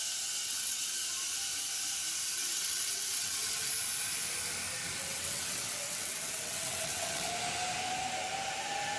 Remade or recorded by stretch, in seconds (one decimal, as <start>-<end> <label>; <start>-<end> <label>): 0.0-0.4 recorded; 0.4-0.9 remade; 0.9-2.4 recorded; 2.4-3.7 remade; 3.7-5.0 recorded; 5.0-7.3 remade; 7.3-9.0 recorded